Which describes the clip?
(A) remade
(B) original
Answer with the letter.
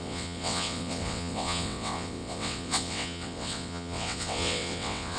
A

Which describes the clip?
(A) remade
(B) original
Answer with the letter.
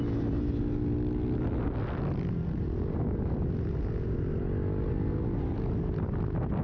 B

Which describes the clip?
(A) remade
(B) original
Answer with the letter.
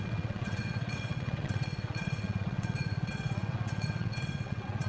A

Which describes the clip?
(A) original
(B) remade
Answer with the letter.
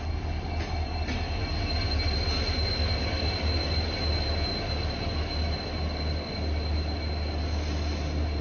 A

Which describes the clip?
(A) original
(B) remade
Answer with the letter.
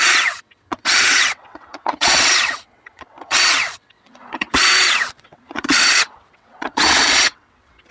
B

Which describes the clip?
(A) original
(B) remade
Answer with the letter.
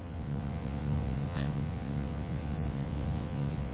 B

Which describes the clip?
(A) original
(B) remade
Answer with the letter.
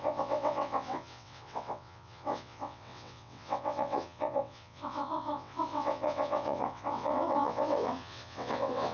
B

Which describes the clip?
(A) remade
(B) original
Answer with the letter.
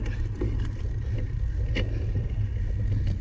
B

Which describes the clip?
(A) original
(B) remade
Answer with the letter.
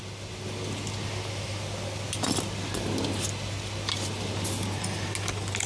A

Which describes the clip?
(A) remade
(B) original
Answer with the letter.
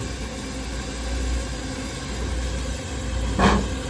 B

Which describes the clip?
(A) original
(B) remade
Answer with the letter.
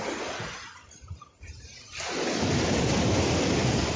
A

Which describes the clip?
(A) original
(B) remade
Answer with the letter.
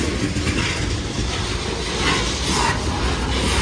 A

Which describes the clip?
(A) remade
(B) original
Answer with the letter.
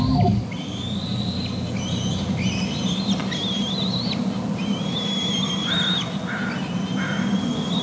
B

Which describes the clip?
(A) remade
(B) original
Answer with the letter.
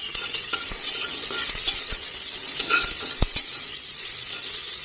A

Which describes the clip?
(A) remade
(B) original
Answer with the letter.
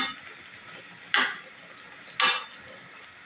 B